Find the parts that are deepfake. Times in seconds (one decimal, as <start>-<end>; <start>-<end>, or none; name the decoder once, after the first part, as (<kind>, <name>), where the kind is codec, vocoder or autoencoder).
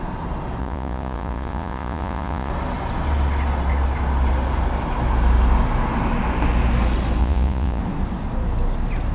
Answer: 0.6-2.5 (vocoder, Vocos); 7.2-7.8